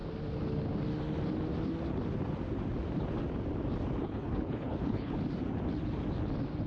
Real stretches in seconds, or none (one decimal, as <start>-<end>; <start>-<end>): 0.0-4.0; 5.1-6.7